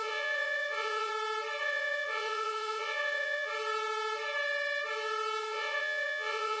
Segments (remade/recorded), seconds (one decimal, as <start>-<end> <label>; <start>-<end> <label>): 0.0-1.1 remade; 1.1-1.6 recorded; 1.6-3.5 remade; 3.5-5.4 recorded; 5.4-6.6 remade